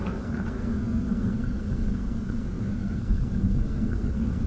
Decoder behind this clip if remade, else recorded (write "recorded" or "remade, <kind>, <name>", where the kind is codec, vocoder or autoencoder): remade, codec, SNAC